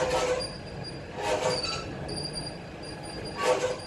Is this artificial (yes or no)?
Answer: no